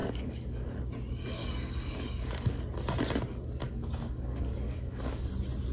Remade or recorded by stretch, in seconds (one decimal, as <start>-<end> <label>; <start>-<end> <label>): 0.0-0.7 remade; 0.7-1.4 recorded; 1.4-2.6 remade; 2.6-3.6 recorded; 3.6-5.3 remade; 5.3-5.7 recorded

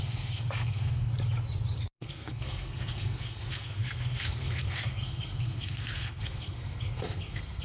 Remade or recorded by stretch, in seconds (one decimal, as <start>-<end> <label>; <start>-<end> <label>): 0.0-1.1 remade; 1.1-1.8 recorded; 1.8-7.6 remade

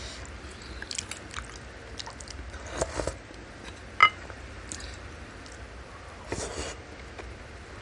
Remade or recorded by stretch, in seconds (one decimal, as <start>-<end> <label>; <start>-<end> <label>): 0.0-4.0 recorded; 4.0-5.1 remade; 5.1-7.8 recorded

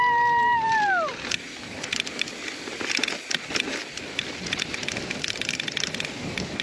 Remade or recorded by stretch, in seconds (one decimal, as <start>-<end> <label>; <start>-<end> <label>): 0.0-1.1 recorded; 1.1-4.6 remade; 4.6-6.6 recorded

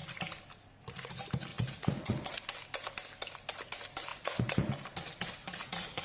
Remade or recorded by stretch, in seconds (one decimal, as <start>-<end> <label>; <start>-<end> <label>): 0.0-1.5 recorded; 1.5-2.1 remade; 2.1-4.1 recorded; 4.1-4.6 remade; 4.6-5.4 recorded; 5.4-6.0 remade

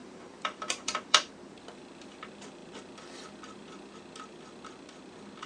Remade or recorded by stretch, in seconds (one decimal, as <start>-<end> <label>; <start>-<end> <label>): 0.0-1.3 remade; 1.3-5.5 recorded

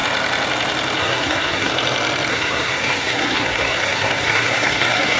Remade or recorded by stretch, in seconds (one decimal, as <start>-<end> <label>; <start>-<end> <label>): 0.0-1.0 recorded; 1.0-1.7 remade; 1.7-2.3 recorded; 2.3-5.2 remade

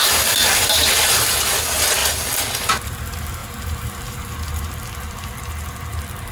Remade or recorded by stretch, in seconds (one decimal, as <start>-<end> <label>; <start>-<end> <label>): 0.0-2.0 recorded; 2.0-3.0 remade; 3.0-3.4 recorded; 3.4-5.4 remade; 5.4-6.3 recorded